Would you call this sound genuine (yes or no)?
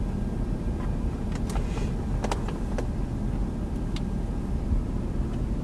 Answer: yes